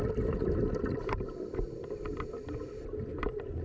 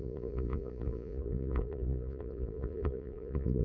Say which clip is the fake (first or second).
second